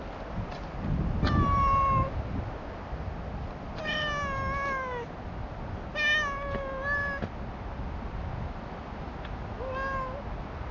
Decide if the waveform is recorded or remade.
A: recorded